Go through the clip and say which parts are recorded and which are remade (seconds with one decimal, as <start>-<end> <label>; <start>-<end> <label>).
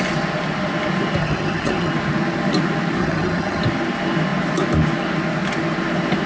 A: 0.0-1.2 recorded; 1.2-1.9 remade; 1.9-3.0 recorded; 3.0-3.6 remade; 3.6-6.3 recorded